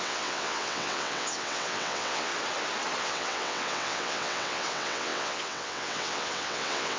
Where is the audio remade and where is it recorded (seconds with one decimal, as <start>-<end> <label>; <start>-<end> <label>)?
0.0-2.3 remade; 2.3-3.0 recorded; 3.0-7.0 remade